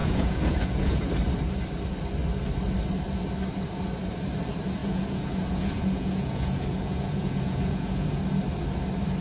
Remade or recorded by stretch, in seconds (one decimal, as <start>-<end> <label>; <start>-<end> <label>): 0.0-1.1 remade; 1.1-4.8 recorded; 4.8-8.2 remade; 8.2-9.2 recorded